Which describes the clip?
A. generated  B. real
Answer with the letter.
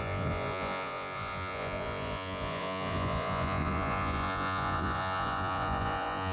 A